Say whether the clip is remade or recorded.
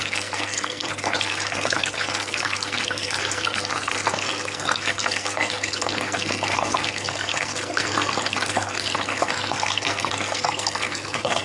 remade